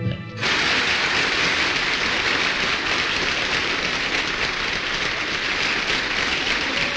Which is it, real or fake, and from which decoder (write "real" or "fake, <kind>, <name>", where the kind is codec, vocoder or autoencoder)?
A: real